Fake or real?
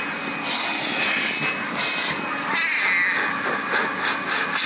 real